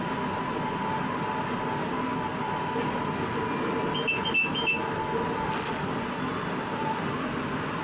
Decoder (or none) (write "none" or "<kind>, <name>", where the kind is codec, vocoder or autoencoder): none